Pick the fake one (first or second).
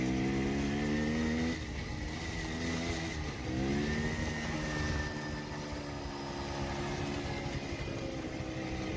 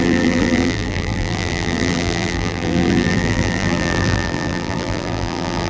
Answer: second